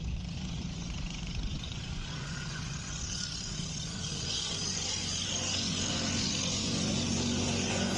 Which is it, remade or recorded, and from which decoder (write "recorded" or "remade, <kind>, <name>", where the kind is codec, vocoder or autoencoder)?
remade, vocoder, Vocos